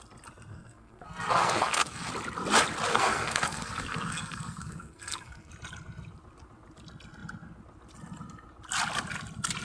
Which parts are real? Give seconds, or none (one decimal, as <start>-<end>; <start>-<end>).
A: 0.0-0.5; 2.1-2.9; 5.5-9.6